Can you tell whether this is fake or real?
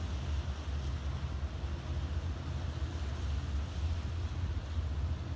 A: real